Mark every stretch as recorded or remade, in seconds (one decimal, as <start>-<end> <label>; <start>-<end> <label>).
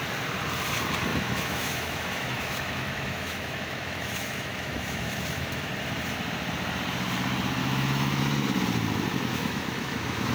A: 0.0-1.1 recorded; 1.1-5.7 remade; 5.7-7.6 recorded; 7.6-8.2 remade; 8.2-9.3 recorded; 9.3-10.3 remade